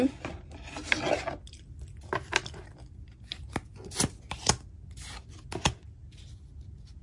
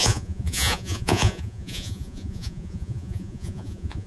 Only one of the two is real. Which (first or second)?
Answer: first